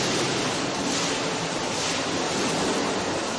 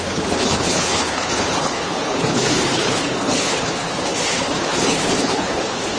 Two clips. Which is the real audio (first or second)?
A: first